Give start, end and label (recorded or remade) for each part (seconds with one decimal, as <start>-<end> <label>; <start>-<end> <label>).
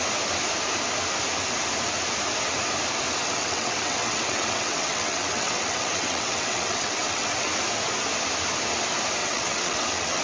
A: 0.0-3.2 recorded; 3.2-7.5 remade; 7.5-9.2 recorded; 9.2-10.2 remade